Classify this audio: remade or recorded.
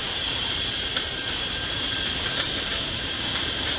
remade